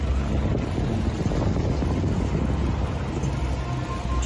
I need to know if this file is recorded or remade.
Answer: recorded